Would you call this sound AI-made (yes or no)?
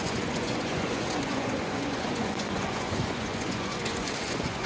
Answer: yes